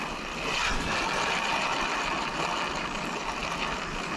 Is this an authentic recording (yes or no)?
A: yes